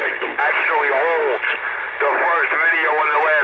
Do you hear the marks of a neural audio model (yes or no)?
no